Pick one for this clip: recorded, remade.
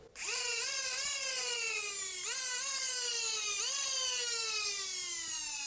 recorded